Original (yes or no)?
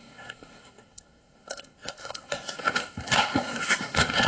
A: no